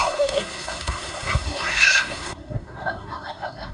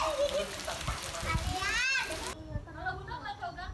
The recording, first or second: second